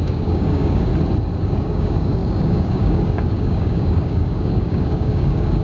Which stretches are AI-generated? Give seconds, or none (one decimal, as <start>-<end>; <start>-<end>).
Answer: 0.0-0.9; 1.4-5.6